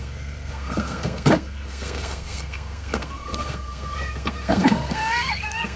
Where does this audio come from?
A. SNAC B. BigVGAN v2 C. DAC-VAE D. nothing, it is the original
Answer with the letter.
A